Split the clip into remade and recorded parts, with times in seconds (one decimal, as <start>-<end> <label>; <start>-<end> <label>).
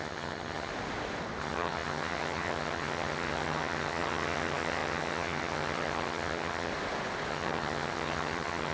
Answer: 0.0-0.7 remade; 0.7-1.4 recorded; 1.4-6.7 remade; 6.7-7.3 recorded; 7.3-8.7 remade